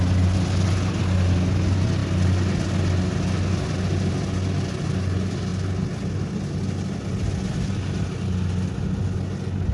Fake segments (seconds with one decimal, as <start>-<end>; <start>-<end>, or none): none